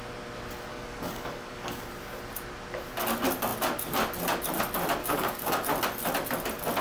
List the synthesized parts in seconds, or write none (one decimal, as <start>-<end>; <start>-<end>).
0.7-1.9; 5.0-5.5